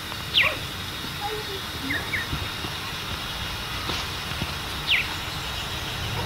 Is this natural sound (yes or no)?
yes